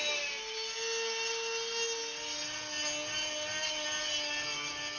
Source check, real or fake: real